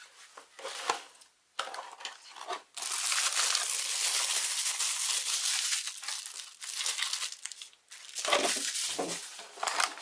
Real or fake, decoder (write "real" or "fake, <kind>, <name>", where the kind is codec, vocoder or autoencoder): real